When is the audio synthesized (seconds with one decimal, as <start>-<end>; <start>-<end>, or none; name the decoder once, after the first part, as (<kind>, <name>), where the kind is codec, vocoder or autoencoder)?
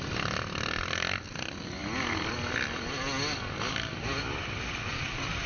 none